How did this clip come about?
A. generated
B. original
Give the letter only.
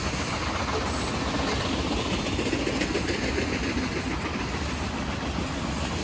B